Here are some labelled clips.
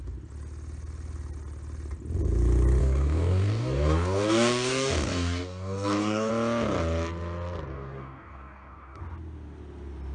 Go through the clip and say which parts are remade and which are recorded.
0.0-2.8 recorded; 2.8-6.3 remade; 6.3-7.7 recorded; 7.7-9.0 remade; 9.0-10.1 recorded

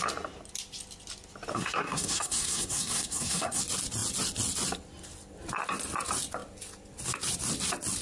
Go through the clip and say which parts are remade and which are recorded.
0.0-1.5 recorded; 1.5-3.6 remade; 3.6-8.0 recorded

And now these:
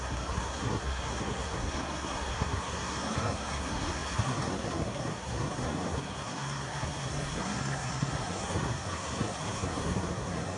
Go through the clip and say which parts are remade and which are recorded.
0.0-10.6 remade

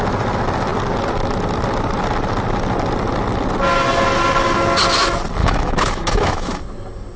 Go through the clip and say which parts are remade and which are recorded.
0.0-5.4 recorded; 5.4-6.6 remade; 6.6-7.2 recorded

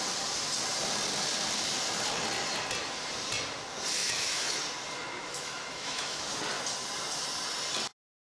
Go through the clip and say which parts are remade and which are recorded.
0.0-4.0 recorded; 4.0-4.6 remade; 4.6-5.2 recorded; 5.2-6.3 remade; 6.3-8.2 recorded